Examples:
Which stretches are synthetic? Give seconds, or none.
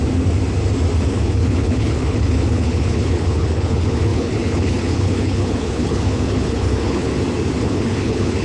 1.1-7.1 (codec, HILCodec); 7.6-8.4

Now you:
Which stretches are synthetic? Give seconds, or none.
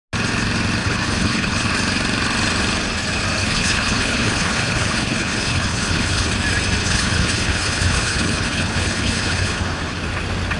0.8-1.7 (codec, HILCodec); 3.4-6.3; 6.8-10.0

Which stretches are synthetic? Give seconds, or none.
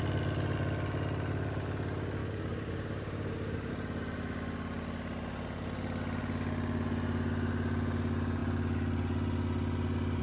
2.2-3.7 (codec, DAC)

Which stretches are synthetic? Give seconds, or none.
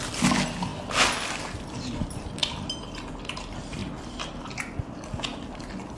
none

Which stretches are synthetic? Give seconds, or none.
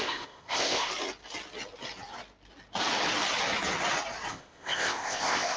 0.0-0.9 (codec, ZipCodec); 4.3-5.6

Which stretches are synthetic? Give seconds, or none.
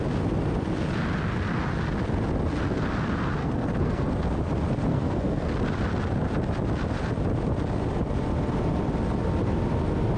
3.4-4.1 (codec, SNAC); 4.9-5.5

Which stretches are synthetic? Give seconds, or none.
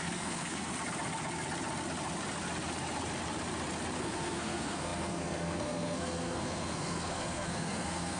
0.0-0.7 (codec, SNAC); 4.0-8.2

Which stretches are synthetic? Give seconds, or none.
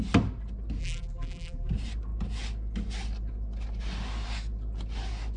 0.8-1.7 (vocoder, BigVGAN v2)